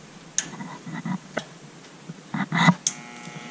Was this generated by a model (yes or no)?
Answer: no